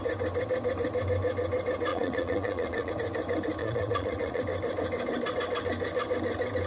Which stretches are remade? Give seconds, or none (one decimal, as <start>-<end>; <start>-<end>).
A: 1.9-2.9; 3.6-4.4